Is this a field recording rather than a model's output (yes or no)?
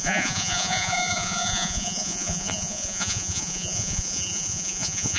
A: no